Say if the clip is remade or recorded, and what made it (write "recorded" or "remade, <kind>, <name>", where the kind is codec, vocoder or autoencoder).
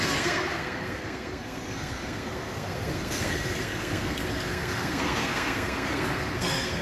remade, codec, SNAC